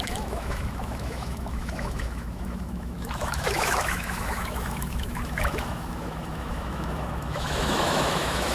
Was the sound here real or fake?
fake